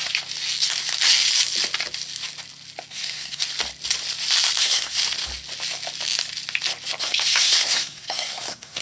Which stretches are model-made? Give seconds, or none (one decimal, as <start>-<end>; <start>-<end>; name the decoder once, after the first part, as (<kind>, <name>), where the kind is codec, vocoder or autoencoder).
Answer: 2.9-3.4 (codec, SNAC); 4.6-5.0; 7.0-8.8